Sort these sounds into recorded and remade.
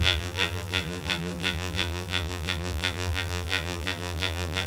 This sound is remade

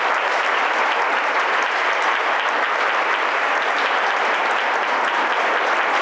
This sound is remade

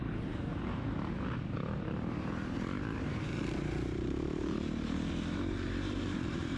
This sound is remade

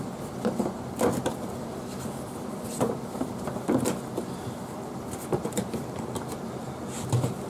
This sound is recorded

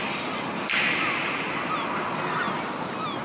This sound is recorded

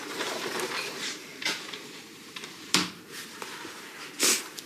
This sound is remade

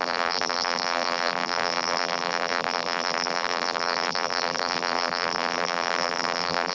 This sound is remade